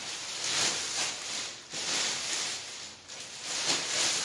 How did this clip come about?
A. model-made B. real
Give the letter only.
B